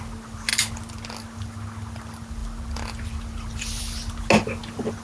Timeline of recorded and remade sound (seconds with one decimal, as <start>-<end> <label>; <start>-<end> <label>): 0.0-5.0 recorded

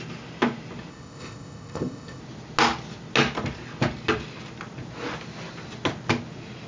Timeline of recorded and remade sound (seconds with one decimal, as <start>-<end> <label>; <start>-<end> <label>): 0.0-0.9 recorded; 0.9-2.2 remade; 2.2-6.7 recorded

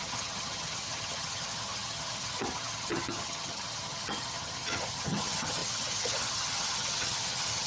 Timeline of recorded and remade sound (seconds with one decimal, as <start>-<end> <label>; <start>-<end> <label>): 0.0-7.7 remade